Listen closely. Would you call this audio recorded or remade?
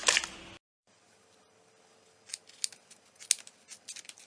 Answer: recorded